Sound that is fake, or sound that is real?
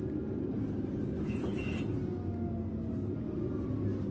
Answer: real